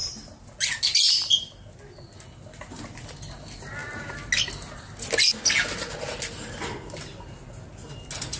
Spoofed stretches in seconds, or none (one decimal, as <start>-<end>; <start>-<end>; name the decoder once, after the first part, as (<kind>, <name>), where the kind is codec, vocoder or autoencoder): none